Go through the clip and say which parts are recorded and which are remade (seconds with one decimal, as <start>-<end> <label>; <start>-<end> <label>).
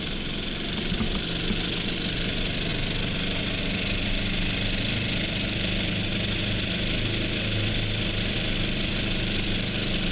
0.0-10.1 recorded